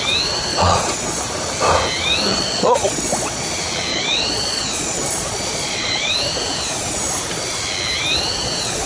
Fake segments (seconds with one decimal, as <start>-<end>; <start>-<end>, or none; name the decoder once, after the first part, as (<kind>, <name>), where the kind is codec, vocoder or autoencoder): 0.5-1.2 (vocoder, Vocos); 2.3-3.4; 3.9-6.1